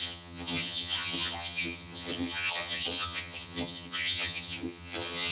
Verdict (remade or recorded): remade